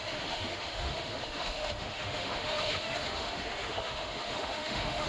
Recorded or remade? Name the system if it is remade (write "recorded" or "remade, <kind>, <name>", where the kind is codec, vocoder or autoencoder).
remade, autoencoder, DAC-VAE